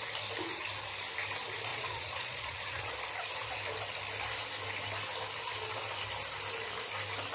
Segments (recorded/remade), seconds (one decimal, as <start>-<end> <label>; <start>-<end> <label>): 0.0-1.7 recorded; 1.7-2.9 remade; 2.9-7.3 recorded